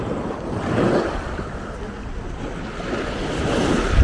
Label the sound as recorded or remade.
recorded